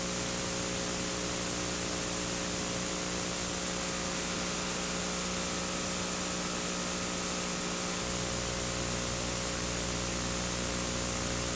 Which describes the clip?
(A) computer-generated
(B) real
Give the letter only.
B